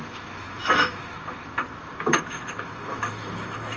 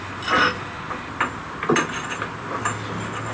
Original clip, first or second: second